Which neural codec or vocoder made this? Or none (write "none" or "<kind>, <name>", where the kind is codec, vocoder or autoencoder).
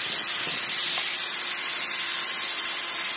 none